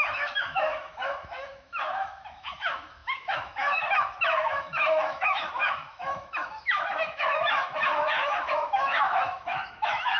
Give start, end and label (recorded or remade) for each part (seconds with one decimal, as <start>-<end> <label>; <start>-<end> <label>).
0.0-10.2 remade

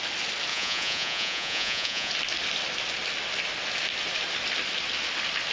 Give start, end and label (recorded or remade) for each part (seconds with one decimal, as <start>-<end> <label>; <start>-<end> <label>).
0.0-0.5 recorded; 0.5-2.1 remade; 2.1-5.5 recorded

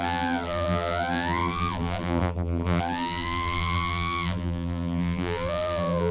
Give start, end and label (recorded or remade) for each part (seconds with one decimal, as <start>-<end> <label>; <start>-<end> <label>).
0.0-6.1 remade

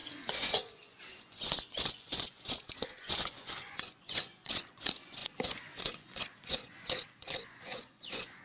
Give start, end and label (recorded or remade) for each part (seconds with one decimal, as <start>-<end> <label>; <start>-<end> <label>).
0.0-8.4 remade

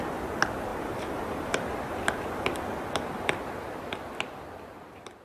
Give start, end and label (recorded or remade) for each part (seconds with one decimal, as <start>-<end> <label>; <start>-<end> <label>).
0.0-0.7 recorded; 0.7-3.8 remade; 3.8-5.2 recorded

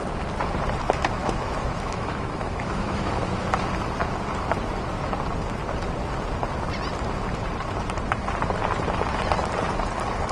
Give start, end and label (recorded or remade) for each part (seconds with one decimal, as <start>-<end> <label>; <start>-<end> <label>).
0.0-1.2 recorded; 1.2-3.2 remade; 3.2-10.3 recorded

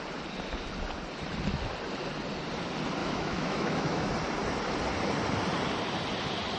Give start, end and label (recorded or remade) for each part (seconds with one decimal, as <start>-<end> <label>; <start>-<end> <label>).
0.0-3.0 recorded; 3.0-4.1 remade; 4.1-6.6 recorded

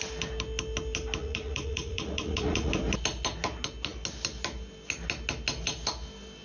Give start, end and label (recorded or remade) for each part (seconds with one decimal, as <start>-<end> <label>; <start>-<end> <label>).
0.0-1.2 recorded; 1.2-2.7 remade; 2.7-6.4 recorded